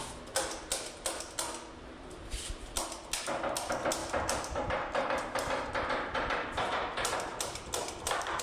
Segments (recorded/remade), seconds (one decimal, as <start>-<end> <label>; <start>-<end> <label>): 0.0-4.0 recorded; 4.0-8.4 remade